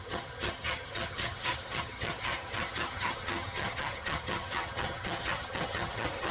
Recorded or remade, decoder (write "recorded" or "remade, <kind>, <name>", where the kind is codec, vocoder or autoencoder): remade, vocoder, HiFi-GAN